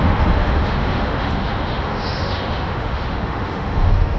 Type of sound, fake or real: fake